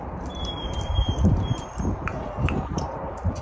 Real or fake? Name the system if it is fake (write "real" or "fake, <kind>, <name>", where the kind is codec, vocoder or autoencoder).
fake, vocoder, BigVGAN v2